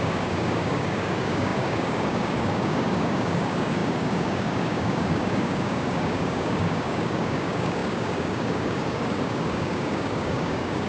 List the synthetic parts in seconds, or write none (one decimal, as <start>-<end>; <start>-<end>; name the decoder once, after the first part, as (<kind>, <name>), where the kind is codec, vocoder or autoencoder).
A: 0.0-10.9 (codec, DAC)